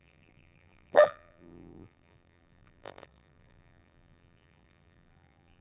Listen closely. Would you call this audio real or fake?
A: fake